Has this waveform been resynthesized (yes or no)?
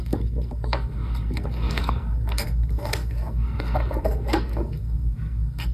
yes